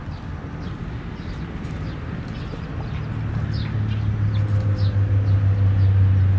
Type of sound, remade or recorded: recorded